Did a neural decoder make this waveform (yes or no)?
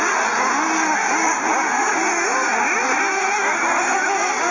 no